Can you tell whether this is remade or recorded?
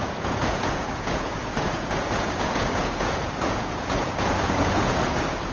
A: remade